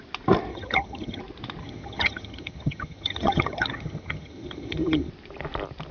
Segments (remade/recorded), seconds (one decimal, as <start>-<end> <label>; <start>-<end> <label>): 0.0-0.5 recorded; 0.5-1.2 remade; 1.2-1.6 recorded; 1.6-5.1 remade; 5.1-5.9 recorded